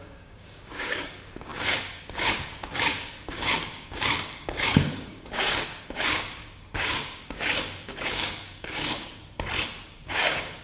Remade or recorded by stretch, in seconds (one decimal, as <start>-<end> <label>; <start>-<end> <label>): 0.0-9.2 remade; 9.2-9.9 recorded; 9.9-10.6 remade